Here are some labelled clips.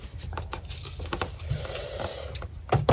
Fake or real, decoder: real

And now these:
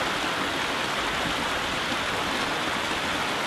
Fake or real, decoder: real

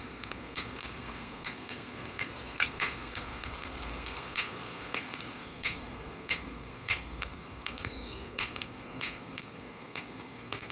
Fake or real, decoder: fake, codec, SNAC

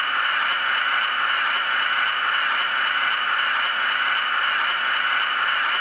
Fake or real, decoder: real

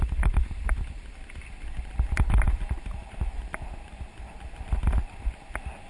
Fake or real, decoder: real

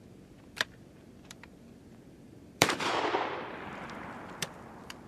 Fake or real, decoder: fake, vocoder, BigVGAN v2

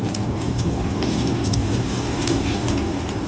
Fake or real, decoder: fake, codec, DAC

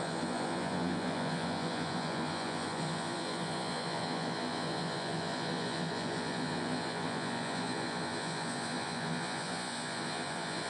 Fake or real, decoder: fake, vocoder, Vocos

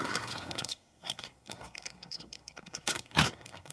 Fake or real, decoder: fake, codec, SNAC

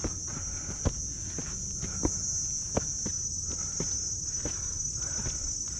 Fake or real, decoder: real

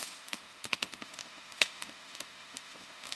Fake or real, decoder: fake, autoencoder, DAC-VAE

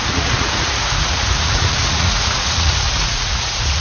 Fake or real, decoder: fake, vocoder, Vocos